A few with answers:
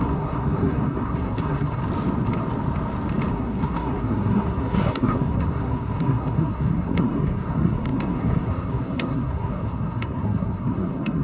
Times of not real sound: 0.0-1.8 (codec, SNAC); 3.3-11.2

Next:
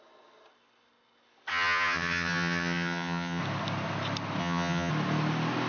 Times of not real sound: 1.5-3.4 (vocoder, HiFi-GAN); 4.4-4.9

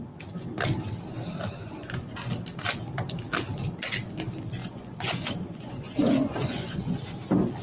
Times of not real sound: 1.6-2.3 (vocoder, Vocos); 4.6-7.0

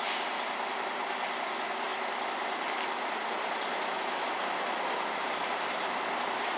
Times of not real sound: none

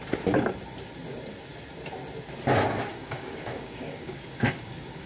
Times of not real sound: 2.9-5.1 (codec, DAC)